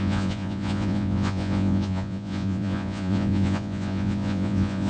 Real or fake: fake